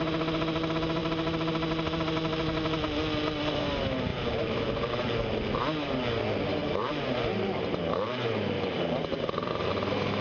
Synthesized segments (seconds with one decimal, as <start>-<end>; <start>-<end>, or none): 4.1-4.9; 6.6-10.2